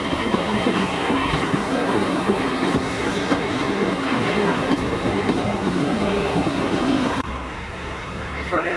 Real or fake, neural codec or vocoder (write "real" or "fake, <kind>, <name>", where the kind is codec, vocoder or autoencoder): fake, codec, SNAC